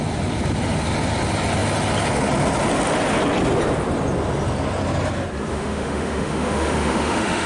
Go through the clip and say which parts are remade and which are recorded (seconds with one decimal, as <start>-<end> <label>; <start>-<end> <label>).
0.0-5.5 recorded; 5.5-7.5 remade